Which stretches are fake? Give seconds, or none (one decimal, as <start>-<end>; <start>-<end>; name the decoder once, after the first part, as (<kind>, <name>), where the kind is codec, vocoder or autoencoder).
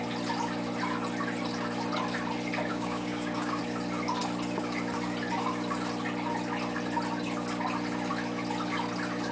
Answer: 2.7-3.6 (codec, DAC)